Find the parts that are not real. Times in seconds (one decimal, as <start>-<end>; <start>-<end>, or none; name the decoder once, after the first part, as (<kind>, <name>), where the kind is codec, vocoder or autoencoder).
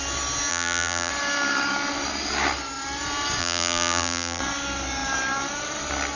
0.5-1.1 (vocoder, BigVGAN v2); 3.4-4.4